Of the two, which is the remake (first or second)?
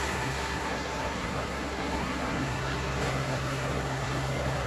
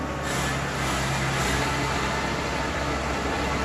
first